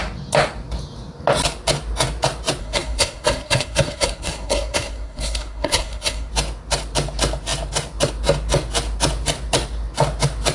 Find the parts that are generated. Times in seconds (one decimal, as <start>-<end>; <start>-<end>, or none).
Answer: 2.6-6.3